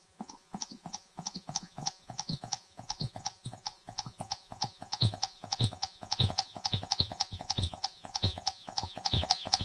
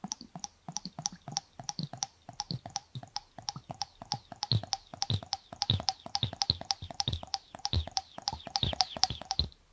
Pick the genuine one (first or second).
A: second